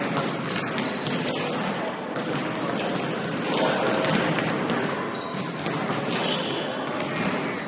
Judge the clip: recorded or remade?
recorded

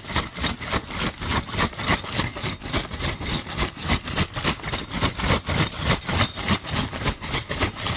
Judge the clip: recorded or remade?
recorded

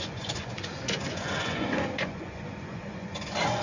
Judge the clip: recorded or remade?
remade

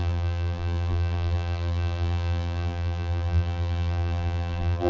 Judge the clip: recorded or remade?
remade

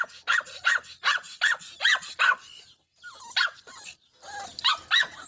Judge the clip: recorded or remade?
recorded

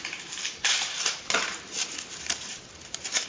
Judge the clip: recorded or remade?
remade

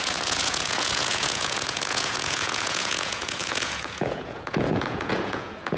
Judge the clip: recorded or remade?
remade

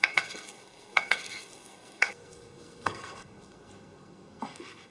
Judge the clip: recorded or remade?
remade